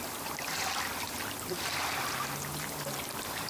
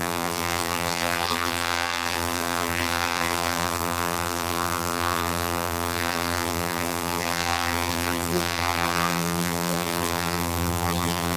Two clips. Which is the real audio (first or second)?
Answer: first